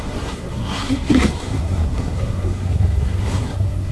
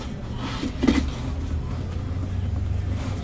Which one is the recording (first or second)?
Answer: second